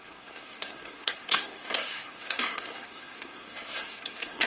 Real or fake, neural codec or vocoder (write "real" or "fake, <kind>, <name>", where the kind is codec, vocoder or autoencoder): fake, codec, SNAC